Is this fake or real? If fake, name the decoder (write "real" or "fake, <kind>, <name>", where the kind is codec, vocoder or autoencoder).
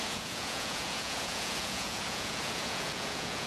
fake, vocoder, Vocos